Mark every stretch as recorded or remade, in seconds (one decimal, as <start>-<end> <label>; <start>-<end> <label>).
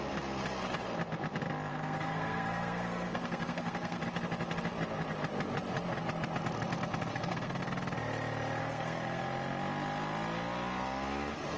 0.0-1.7 recorded; 1.7-4.0 remade; 4.0-7.1 recorded; 7.1-7.6 remade; 7.6-8.6 recorded; 8.6-9.2 remade; 9.2-11.6 recorded